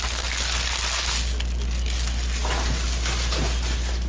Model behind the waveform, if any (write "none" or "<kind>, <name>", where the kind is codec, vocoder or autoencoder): none